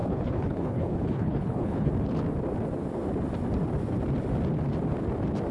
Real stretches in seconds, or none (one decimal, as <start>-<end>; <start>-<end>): 1.9-5.5